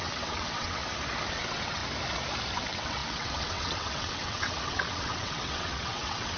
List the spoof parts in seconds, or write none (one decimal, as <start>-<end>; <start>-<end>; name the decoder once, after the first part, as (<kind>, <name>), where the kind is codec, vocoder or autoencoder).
0.0-0.8 (vocoder, WaveNeXt); 1.3-1.8; 2.5-6.4